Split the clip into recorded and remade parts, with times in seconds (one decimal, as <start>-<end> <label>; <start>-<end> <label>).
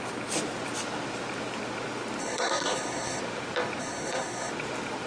0.0-2.2 recorded; 2.2-3.2 remade; 3.2-3.8 recorded; 3.8-4.5 remade; 4.5-5.1 recorded